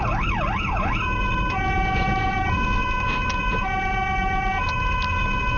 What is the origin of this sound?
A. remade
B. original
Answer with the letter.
B